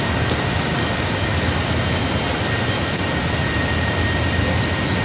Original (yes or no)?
yes